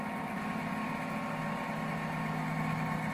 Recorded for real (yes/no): yes